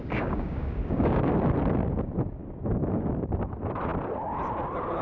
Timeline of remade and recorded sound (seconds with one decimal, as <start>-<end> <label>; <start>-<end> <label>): 0.0-1.3 remade; 1.3-2.4 recorded; 2.4-3.5 remade; 3.5-5.0 recorded

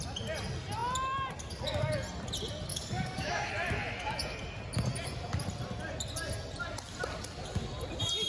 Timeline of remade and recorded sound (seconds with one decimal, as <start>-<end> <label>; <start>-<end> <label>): 0.0-2.7 recorded; 2.7-3.5 remade; 3.5-8.3 recorded

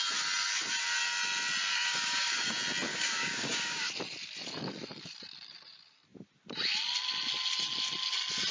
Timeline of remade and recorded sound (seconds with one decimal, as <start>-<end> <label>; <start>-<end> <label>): 0.0-1.7 recorded; 1.7-2.5 remade; 2.5-2.9 recorded; 2.9-3.9 remade; 3.9-8.5 recorded

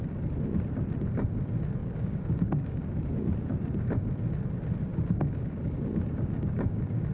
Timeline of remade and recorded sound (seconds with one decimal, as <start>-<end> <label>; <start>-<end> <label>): 0.0-1.8 recorded; 1.8-4.0 remade; 4.0-4.9 recorded; 4.9-7.1 remade

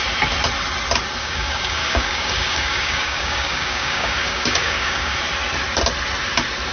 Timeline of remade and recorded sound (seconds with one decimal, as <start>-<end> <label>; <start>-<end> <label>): 0.0-1.2 recorded; 1.2-5.2 remade; 5.2-6.7 recorded

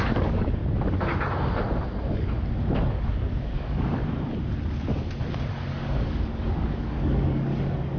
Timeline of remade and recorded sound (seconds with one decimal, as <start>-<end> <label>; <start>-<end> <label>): 0.0-0.6 remade; 0.6-2.9 recorded; 2.9-4.0 remade; 4.0-5.5 recorded; 5.5-8.0 remade

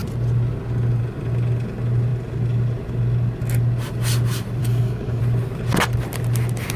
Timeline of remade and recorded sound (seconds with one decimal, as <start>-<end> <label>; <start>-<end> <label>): 0.0-4.6 recorded; 4.6-5.2 remade; 5.2-6.8 recorded

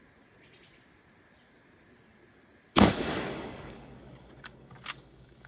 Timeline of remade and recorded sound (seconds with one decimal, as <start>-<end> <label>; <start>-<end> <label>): 0.0-2.7 recorded; 2.7-5.5 remade